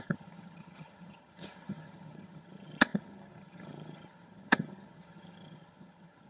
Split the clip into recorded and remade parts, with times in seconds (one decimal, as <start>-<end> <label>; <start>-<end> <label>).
0.0-6.3 remade